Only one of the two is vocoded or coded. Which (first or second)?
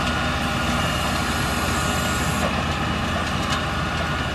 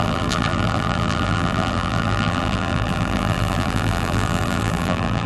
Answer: second